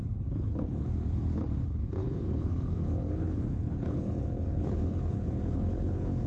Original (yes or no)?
no